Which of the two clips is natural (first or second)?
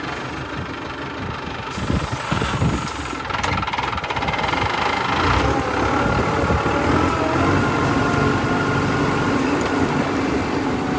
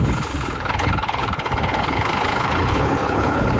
first